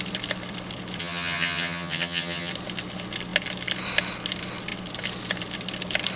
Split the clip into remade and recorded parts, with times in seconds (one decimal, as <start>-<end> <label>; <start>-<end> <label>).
0.0-1.0 recorded; 1.0-2.5 remade; 2.5-6.2 recorded